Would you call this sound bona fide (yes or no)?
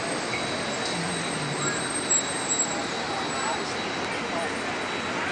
yes